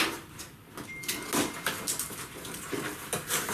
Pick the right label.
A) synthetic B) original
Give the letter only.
B